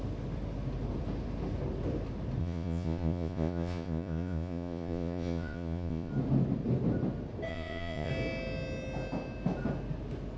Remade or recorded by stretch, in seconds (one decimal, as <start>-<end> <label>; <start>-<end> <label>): 0.0-2.4 recorded; 2.4-6.1 remade; 6.1-7.5 recorded; 7.5-8.1 remade; 8.1-10.4 recorded